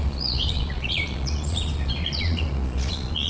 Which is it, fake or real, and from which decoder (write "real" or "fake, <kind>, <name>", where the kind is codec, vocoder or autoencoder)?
fake, vocoder, Vocos